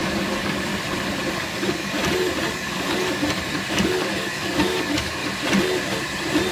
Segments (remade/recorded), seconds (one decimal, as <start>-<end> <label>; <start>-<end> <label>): 0.0-0.7 remade; 0.7-1.3 recorded; 1.3-2.0 remade; 2.0-2.5 recorded; 2.5-3.2 remade; 3.2-3.7 recorded; 3.7-5.2 remade; 5.2-6.5 recorded